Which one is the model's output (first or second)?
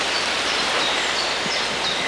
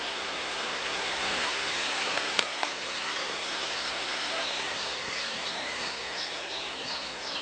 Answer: second